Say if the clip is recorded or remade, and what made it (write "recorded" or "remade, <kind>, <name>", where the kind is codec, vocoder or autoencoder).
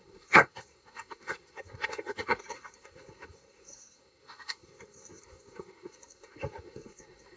remade, codec, SNAC